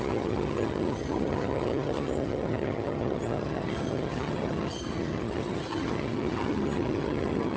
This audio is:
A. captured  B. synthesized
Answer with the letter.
B